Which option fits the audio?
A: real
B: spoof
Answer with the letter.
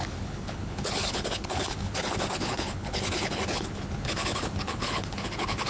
B